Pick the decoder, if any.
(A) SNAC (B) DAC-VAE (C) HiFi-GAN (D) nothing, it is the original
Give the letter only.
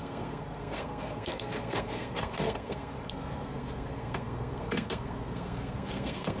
A